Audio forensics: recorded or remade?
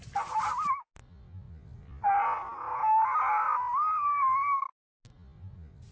recorded